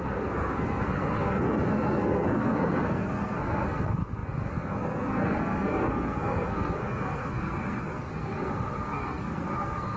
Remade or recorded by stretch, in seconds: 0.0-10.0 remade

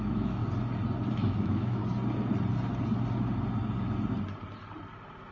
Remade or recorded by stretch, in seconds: 0.0-0.4 remade; 0.4-1.1 recorded; 1.1-1.8 remade; 1.8-5.3 recorded

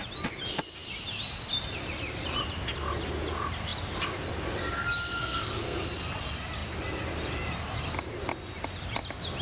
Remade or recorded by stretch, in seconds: 0.0-5.2 recorded; 5.2-5.8 remade; 5.8-9.4 recorded

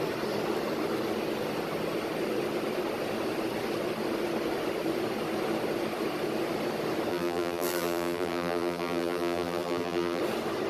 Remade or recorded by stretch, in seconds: 0.0-7.1 recorded; 7.1-10.2 remade; 10.2-10.7 recorded

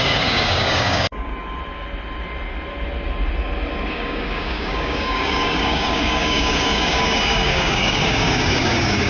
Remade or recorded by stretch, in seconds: 0.0-1.3 remade; 1.3-3.9 recorded; 3.9-9.1 remade

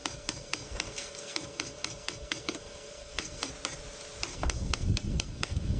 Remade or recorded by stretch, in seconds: 0.0-3.5 remade; 3.5-4.3 recorded; 4.3-5.8 remade

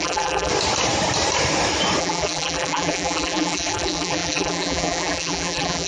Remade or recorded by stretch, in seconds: 0.0-0.5 remade; 0.5-2.0 recorded; 2.0-5.9 remade

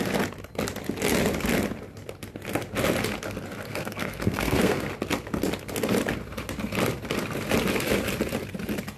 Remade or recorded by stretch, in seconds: 0.0-3.7 recorded; 3.7-4.9 remade; 4.9-9.0 recorded